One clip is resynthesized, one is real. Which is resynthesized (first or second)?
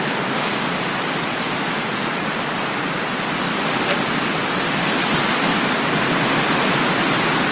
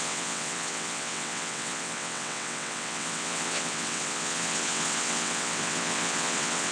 second